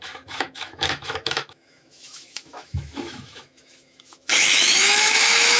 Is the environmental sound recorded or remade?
remade